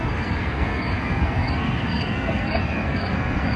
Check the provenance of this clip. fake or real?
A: fake